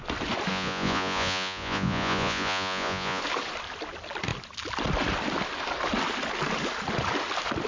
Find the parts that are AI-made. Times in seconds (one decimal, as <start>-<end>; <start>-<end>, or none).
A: 0.5-3.2